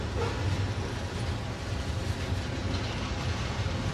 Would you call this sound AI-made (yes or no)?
no